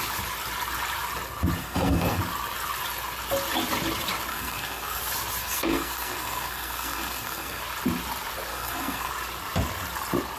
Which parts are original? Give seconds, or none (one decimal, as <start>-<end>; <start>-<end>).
0.0-1.6; 2.2-4.3; 5.0-5.4; 7.6-8.5; 9.1-10.4